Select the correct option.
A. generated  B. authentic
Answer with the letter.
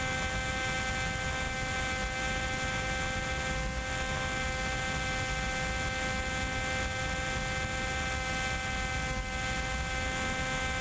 B